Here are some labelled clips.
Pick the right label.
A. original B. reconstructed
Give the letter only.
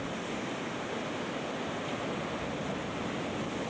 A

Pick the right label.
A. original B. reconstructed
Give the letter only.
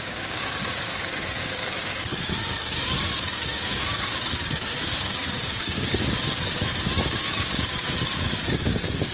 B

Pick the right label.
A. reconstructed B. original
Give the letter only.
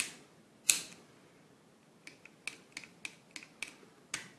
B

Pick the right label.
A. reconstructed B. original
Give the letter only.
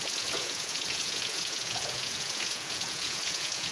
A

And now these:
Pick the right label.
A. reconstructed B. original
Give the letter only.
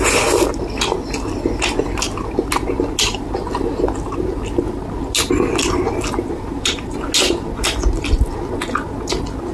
B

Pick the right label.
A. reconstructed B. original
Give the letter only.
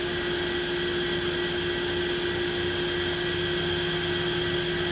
B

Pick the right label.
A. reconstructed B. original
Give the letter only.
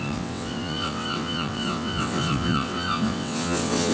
A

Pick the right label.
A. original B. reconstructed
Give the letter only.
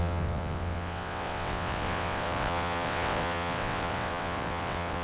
B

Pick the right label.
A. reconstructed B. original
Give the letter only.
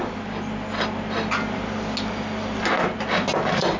B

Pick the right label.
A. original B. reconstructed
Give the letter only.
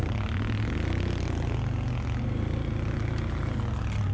A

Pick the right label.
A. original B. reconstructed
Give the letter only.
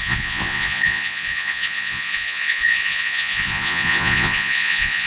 B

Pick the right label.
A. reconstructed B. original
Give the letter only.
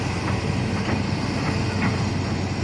B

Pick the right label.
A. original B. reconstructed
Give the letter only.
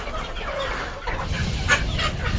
A